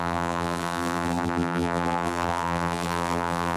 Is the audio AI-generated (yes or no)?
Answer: yes